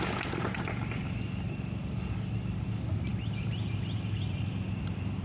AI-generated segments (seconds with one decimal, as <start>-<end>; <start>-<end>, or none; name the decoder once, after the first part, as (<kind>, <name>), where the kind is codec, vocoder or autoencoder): none